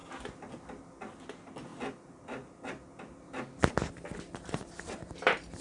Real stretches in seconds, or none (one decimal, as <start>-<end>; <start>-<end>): 0.0-5.6